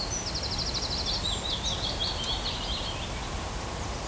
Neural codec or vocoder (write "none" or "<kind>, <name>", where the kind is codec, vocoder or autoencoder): none